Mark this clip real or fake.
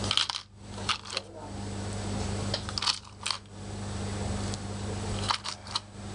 real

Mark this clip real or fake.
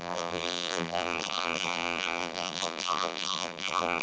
fake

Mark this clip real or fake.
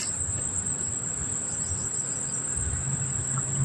fake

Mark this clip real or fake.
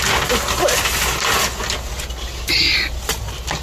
real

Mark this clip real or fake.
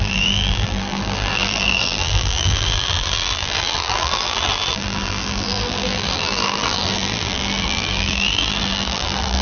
fake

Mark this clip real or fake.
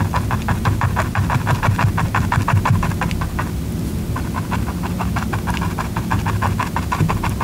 real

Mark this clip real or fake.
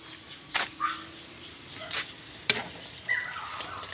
real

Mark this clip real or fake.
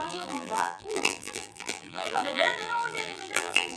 fake